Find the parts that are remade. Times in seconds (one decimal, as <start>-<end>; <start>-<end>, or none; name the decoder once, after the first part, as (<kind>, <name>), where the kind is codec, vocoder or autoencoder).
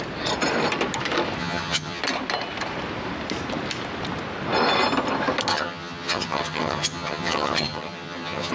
1.4-2.0 (vocoder, HiFi-GAN); 5.5-8.5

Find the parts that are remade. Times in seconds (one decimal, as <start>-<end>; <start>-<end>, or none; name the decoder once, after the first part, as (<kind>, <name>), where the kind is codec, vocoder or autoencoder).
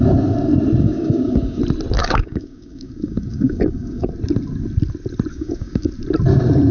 0.8-1.6 (codec, DAC); 2.0-4.1; 5.3-5.9